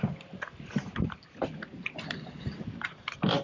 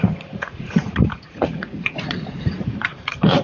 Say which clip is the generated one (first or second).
second